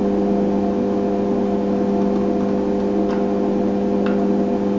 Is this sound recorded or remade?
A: recorded